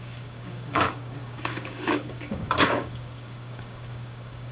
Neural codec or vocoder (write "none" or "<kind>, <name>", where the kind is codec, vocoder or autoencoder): codec, DAC